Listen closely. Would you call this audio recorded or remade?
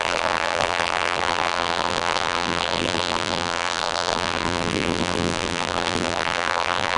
remade